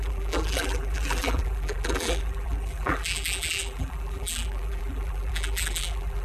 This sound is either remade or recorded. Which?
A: remade